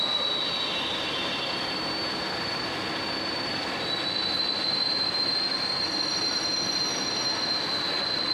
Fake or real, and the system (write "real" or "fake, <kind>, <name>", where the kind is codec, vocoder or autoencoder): real